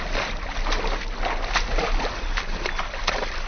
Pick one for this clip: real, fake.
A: real